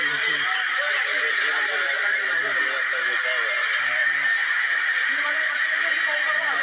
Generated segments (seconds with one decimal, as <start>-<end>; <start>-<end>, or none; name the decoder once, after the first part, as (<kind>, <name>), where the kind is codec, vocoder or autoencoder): none